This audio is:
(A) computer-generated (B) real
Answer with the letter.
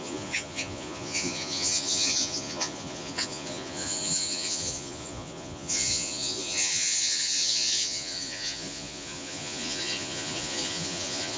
A